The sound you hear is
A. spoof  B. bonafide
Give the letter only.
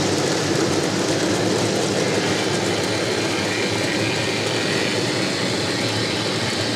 B